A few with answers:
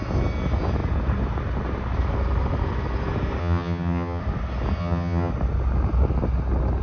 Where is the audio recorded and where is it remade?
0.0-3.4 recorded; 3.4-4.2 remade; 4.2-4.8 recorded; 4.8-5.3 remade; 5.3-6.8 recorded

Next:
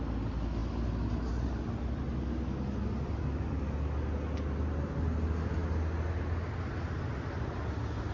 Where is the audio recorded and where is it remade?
0.0-8.1 recorded

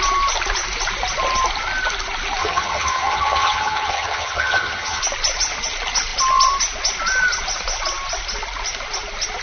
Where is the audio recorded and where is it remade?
0.0-2.4 recorded; 2.4-5.0 remade; 5.0-9.4 recorded

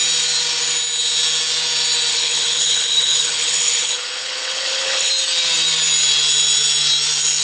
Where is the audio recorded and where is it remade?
0.0-2.1 recorded; 2.1-5.1 remade; 5.1-7.4 recorded

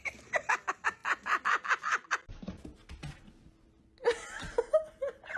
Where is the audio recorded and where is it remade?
0.0-5.4 recorded

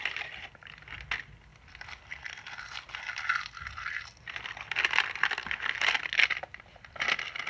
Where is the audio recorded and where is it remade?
0.0-7.5 recorded

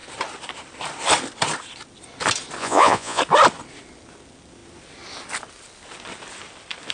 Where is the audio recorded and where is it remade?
0.0-2.6 recorded; 2.6-3.2 remade; 3.2-6.9 recorded

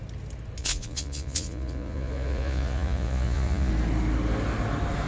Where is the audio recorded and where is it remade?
0.0-0.6 recorded; 0.6-3.7 remade; 3.7-5.1 recorded